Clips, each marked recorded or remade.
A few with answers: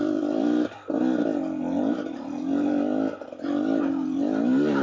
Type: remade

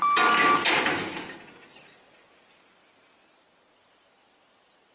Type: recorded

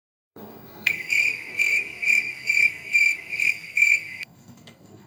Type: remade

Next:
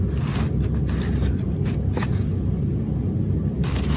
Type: recorded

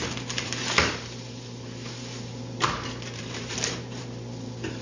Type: remade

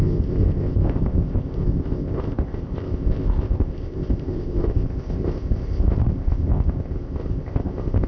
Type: remade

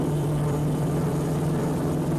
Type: remade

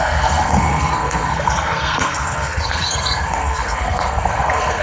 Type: remade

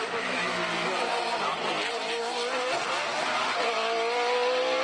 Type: recorded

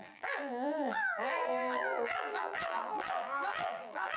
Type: remade